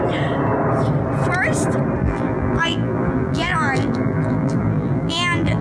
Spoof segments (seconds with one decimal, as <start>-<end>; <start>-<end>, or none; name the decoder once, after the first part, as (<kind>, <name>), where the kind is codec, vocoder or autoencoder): 2.0-5.6 (vocoder, BigVGAN v2)